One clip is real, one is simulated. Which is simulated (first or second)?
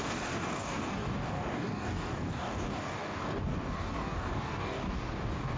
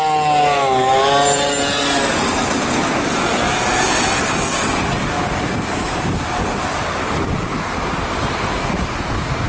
first